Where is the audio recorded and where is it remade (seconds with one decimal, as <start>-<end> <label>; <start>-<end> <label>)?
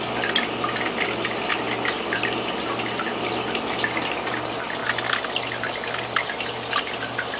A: 0.0-7.4 recorded